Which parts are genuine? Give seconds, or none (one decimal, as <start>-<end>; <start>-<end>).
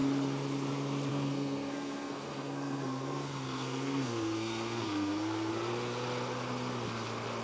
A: 0.0-1.1; 5.5-7.4